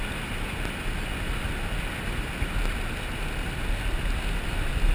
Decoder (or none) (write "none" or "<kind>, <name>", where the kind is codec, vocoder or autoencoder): none